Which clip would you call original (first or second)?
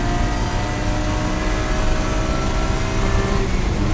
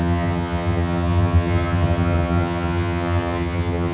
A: first